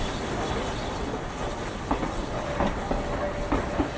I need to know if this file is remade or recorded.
recorded